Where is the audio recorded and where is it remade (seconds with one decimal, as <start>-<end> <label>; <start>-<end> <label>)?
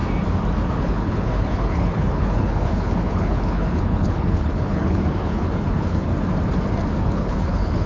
0.0-0.7 recorded; 0.7-6.1 remade; 6.1-6.9 recorded; 6.9-7.9 remade